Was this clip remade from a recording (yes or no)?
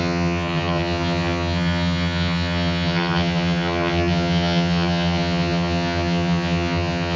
yes